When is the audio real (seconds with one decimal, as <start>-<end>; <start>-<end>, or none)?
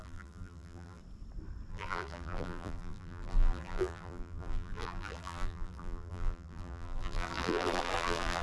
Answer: 1.0-1.7